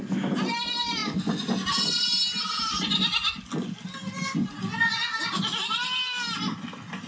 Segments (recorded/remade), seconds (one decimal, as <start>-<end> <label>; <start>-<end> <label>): 0.0-7.1 recorded